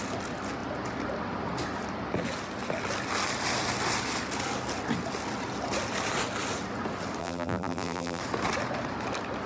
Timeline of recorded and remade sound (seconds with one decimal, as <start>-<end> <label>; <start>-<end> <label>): 0.0-7.2 recorded; 7.2-8.2 remade; 8.2-9.5 recorded